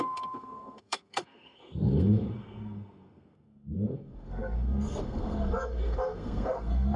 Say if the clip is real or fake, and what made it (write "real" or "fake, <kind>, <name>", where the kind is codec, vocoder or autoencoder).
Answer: fake, codec, SNAC